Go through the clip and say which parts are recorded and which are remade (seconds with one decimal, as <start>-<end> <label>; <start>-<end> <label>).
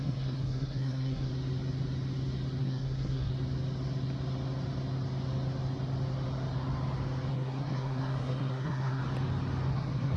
0.0-1.3 remade; 1.3-2.6 recorded; 2.6-3.3 remade; 3.3-7.3 recorded; 7.3-9.0 remade; 9.0-9.7 recorded; 9.7-10.2 remade